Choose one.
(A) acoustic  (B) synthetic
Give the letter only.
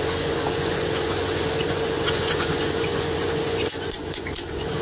B